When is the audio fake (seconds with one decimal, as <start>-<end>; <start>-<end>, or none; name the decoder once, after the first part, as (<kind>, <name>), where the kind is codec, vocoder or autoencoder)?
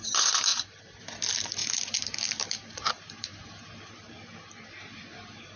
0.0-5.6 (vocoder, BigVGAN v2)